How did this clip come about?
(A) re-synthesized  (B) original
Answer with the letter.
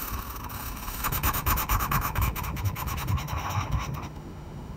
A